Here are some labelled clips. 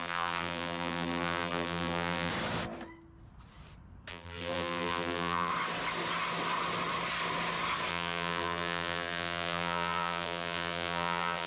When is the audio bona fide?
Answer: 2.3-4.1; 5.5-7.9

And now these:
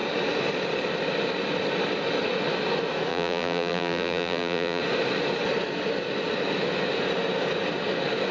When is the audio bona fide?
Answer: 0.0-3.1; 4.8-8.3

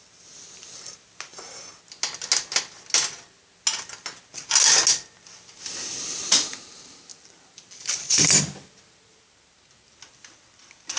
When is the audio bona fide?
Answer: 0.0-7.1; 8.4-11.0

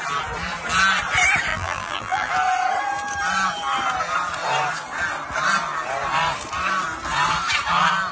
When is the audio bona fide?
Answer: 0.0-1.5; 2.3-8.1

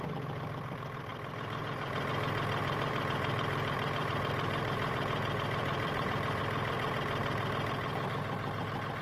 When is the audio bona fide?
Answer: 0.0-1.1; 2.1-2.6; 6.4-9.0

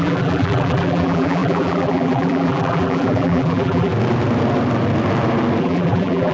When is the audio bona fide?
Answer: 3.9-5.6